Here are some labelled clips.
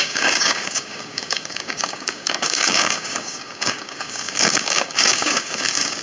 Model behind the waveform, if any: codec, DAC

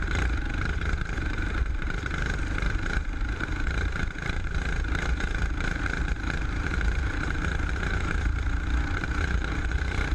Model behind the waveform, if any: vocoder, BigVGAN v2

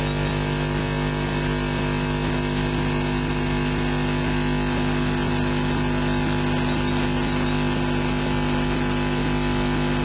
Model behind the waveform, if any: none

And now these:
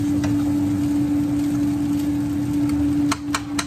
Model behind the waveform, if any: none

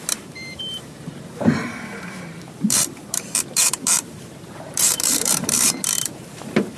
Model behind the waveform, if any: vocoder, BigVGAN v2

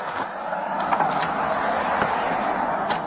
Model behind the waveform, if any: none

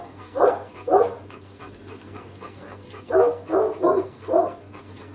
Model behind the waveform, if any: codec, SNAC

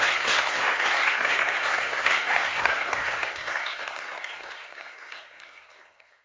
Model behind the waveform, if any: codec, SNAC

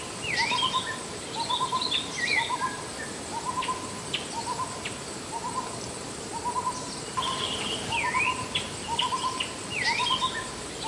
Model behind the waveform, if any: none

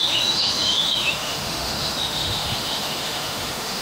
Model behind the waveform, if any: autoencoder, DAC-VAE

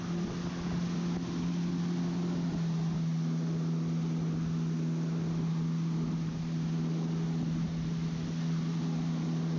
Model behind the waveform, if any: none